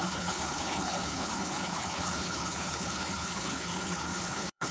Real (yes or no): no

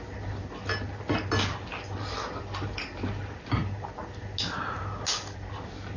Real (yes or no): yes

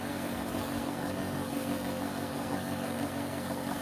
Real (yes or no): no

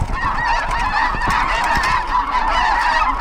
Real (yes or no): yes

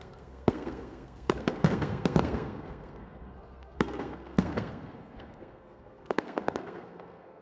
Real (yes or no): no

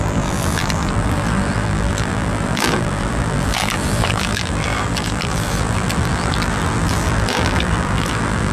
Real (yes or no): no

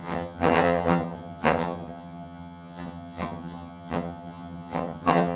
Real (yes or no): no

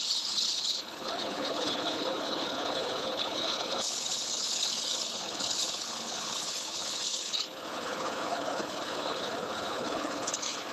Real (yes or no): no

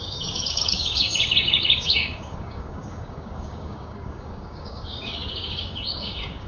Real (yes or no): no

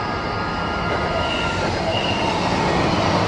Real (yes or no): yes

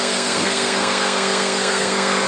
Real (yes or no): no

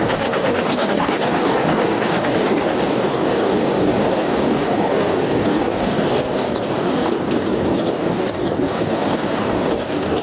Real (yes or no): no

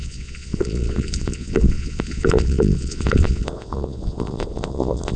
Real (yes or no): no